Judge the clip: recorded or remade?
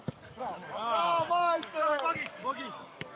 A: remade